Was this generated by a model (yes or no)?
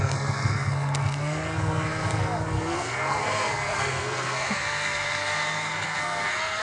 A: yes